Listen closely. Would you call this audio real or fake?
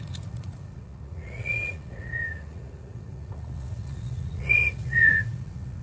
fake